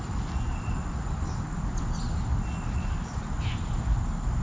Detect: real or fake real